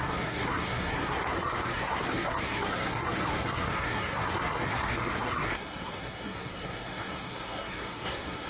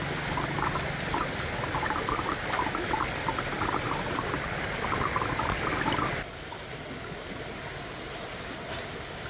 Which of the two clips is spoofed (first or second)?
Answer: first